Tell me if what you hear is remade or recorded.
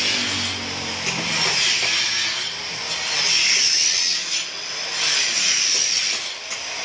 recorded